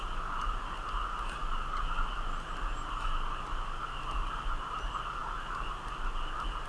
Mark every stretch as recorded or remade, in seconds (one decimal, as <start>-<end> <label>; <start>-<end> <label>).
0.0-6.7 recorded